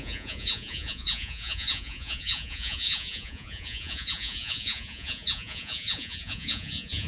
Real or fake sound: fake